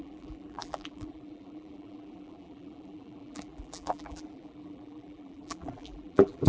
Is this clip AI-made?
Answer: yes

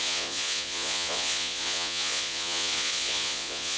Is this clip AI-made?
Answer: yes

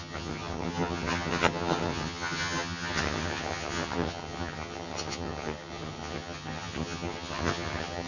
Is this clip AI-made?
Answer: yes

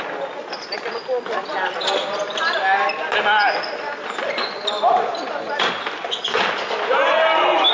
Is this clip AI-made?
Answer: no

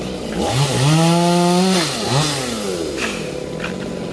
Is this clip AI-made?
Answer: no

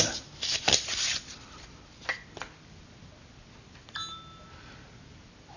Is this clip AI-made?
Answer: no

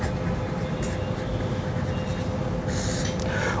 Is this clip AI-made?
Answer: no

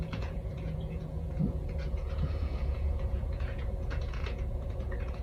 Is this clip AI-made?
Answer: yes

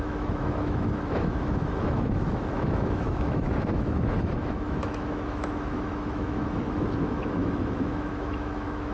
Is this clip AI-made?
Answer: yes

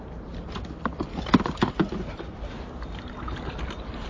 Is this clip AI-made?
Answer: no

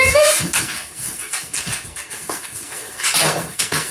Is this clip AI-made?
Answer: yes